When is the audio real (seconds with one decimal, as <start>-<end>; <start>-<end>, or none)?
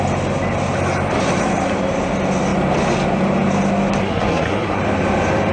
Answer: 0.0-4.0; 4.8-5.5